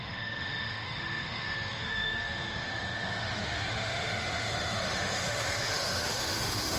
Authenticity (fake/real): fake